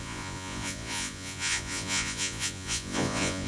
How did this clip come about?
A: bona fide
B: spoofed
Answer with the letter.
B